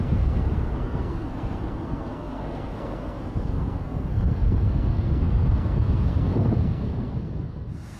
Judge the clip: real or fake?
fake